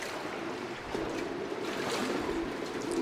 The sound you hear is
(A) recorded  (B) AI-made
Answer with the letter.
B